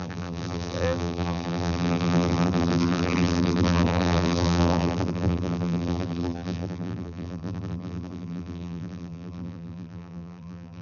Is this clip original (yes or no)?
no